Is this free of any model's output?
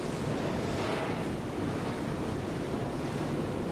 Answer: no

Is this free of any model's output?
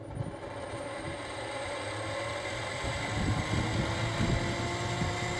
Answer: yes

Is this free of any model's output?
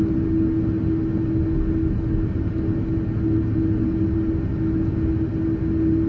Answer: yes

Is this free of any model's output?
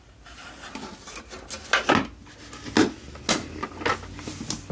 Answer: yes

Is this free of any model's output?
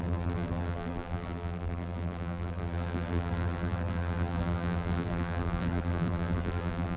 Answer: no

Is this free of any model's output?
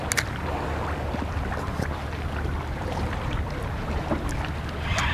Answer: yes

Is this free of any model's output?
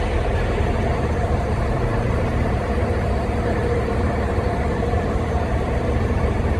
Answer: no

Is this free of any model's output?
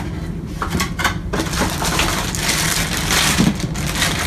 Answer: no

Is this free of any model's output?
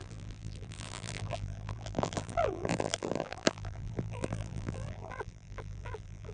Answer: no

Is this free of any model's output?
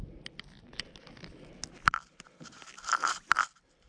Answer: yes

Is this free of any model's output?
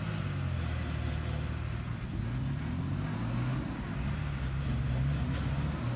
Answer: yes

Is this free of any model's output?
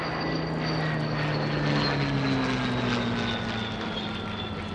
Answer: yes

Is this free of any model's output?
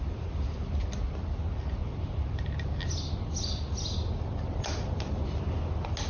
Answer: yes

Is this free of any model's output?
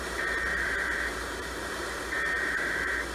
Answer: no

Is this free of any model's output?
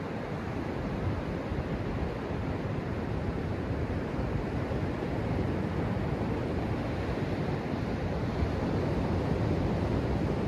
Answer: no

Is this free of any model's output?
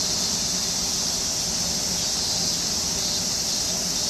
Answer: yes